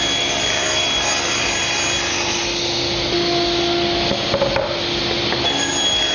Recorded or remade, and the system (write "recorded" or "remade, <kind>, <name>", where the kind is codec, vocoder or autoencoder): recorded